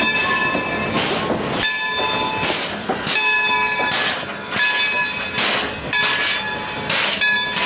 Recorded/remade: recorded